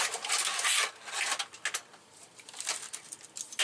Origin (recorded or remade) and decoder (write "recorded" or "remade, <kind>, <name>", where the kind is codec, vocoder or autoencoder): recorded